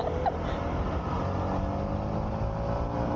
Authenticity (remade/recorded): recorded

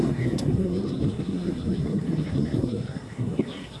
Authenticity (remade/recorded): remade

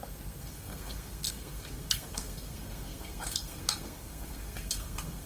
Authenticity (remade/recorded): remade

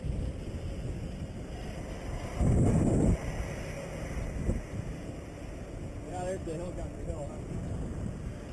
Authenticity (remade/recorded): recorded